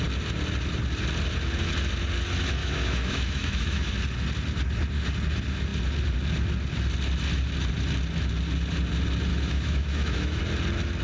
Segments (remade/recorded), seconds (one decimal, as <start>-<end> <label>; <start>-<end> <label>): 0.0-2.6 recorded; 2.6-3.9 remade; 3.9-9.3 recorded; 9.3-10.4 remade; 10.4-11.0 recorded